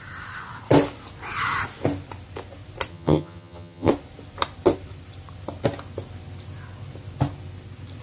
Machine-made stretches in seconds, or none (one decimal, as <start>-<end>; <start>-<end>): 2.9-3.9